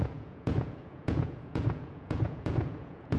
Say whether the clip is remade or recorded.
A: remade